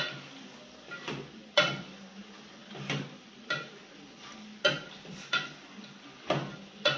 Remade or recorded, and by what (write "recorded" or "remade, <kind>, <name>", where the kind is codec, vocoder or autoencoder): recorded